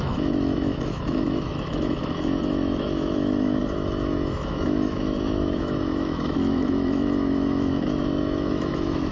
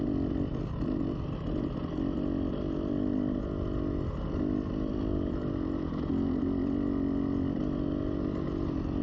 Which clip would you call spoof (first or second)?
first